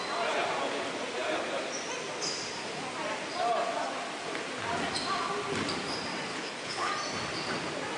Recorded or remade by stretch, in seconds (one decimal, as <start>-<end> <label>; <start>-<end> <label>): 0.0-6.3 recorded; 6.3-6.9 remade; 6.9-8.0 recorded